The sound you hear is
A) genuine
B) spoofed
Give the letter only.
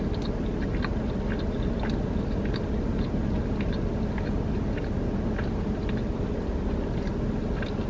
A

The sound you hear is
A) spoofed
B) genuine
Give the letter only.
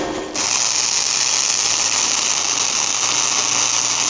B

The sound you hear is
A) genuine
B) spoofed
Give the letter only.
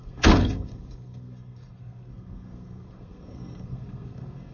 B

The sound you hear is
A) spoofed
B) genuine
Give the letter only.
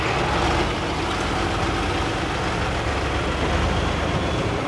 B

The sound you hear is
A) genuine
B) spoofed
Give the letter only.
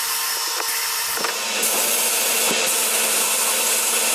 A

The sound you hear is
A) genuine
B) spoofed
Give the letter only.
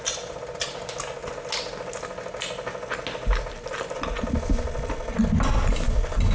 A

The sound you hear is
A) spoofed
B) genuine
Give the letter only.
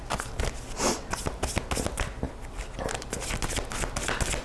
B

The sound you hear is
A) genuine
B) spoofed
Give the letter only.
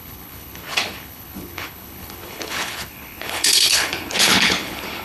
B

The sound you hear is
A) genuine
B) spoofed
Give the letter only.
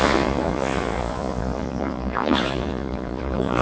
B